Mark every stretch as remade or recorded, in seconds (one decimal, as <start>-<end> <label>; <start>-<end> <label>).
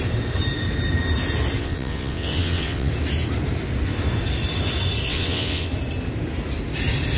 0.0-1.6 recorded; 1.6-2.9 remade; 2.9-5.1 recorded; 5.1-5.7 remade; 5.7-7.2 recorded